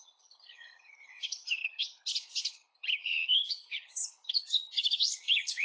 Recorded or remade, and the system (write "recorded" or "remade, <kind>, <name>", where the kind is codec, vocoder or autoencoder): remade, codec, HILCodec